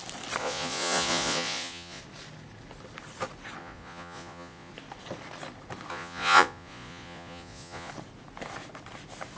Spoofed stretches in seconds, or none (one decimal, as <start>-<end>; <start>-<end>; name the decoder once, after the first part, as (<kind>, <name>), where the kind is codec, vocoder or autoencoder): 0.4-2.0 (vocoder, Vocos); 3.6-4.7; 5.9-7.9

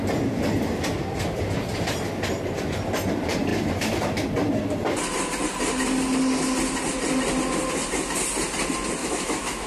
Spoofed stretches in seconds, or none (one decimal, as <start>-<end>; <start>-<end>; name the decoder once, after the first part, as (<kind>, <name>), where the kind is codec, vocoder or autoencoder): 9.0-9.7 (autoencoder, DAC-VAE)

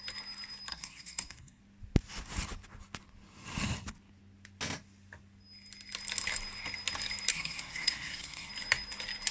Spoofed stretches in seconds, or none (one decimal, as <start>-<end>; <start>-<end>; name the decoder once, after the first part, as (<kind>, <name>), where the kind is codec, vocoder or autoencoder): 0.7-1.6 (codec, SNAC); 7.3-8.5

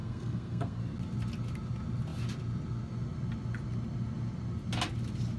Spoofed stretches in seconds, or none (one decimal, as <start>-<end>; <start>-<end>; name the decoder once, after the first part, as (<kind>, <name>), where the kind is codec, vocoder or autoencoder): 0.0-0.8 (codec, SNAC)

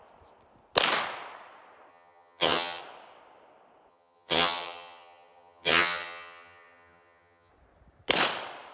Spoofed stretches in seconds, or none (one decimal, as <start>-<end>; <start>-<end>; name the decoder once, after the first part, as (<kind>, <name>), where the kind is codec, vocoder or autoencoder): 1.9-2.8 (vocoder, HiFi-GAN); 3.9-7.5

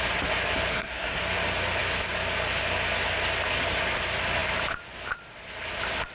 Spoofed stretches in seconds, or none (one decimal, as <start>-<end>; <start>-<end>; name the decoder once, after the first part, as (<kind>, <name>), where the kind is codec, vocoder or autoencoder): 0.7-1.2 (codec, SNAC)